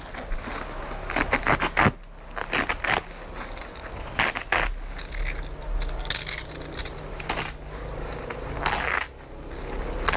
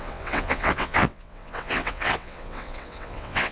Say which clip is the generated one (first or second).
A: second